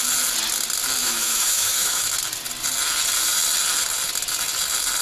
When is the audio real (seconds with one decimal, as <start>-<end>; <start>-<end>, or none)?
0.0-1.0; 2.1-5.0